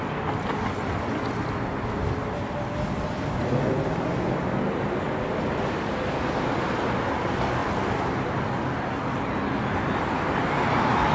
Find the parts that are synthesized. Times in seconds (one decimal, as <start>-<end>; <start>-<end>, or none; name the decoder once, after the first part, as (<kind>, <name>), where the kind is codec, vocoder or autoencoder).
none